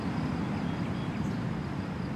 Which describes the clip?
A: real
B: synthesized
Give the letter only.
A